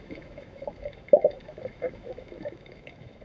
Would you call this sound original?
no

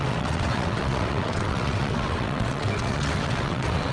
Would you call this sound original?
no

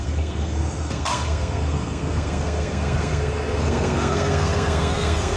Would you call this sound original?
no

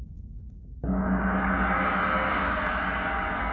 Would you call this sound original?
no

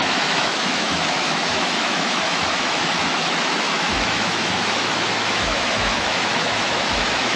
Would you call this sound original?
no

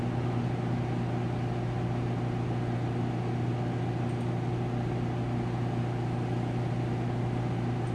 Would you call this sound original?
yes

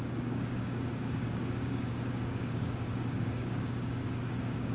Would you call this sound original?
no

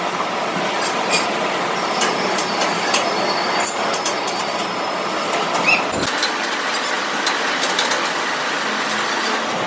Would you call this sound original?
yes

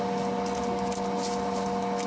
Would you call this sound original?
yes